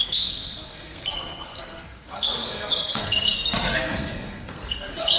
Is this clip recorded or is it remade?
remade